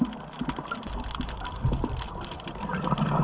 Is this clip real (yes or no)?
yes